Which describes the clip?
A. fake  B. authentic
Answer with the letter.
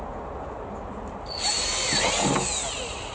B